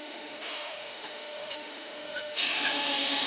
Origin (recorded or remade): remade